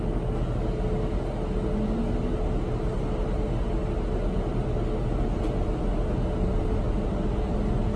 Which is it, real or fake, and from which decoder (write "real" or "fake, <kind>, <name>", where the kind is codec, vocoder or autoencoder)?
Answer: real